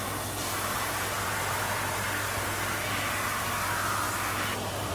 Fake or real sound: real